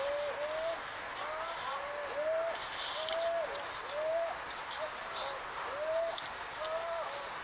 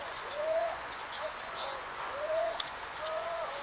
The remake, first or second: second